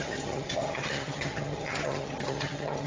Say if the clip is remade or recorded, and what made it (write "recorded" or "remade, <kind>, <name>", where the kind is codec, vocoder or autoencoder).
remade, vocoder, HiFi-GAN